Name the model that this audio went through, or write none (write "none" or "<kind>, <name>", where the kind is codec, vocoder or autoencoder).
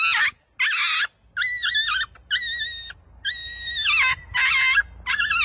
none